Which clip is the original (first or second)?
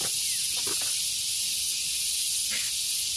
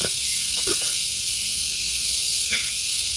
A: first